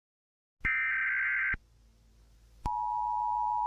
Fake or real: real